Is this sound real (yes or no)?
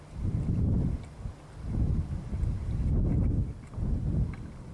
yes